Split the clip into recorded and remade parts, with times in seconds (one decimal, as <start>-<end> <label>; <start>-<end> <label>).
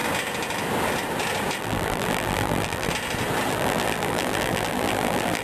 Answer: 0.0-1.6 recorded; 1.6-2.9 remade; 2.9-3.5 recorded; 3.5-5.4 remade